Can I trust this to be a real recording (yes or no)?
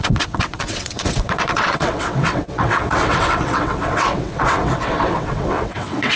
no